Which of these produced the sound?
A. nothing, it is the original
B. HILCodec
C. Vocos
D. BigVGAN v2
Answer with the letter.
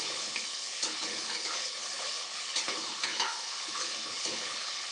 B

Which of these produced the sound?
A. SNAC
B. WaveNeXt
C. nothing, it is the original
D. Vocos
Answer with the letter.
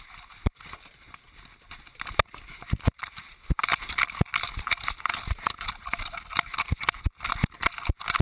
C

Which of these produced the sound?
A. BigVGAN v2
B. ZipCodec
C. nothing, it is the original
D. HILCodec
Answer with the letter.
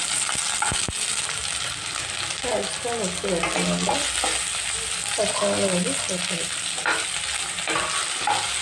C